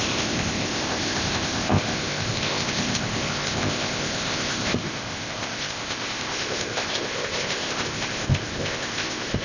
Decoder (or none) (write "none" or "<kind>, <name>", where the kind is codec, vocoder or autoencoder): codec, ZipCodec